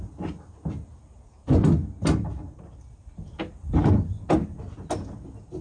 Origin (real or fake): real